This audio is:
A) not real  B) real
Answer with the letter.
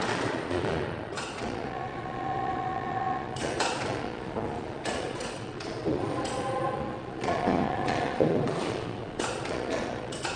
A